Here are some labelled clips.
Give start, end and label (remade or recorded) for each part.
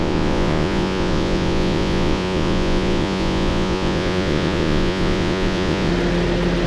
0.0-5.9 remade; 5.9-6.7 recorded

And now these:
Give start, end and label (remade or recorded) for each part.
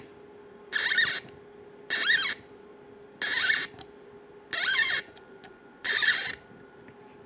0.0-4.7 recorded; 4.7-6.3 remade; 6.3-7.3 recorded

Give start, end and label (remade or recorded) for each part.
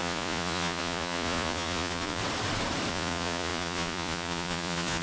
0.0-2.2 remade; 2.2-2.9 recorded; 2.9-5.0 remade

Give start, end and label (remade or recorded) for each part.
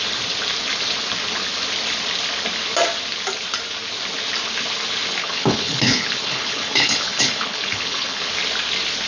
0.0-5.2 recorded; 5.2-8.3 remade; 8.3-9.1 recorded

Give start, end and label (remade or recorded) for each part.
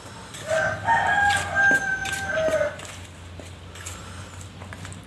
0.0-5.1 recorded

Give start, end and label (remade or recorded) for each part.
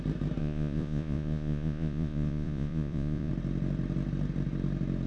0.0-0.4 recorded; 0.4-3.3 remade; 3.3-5.1 recorded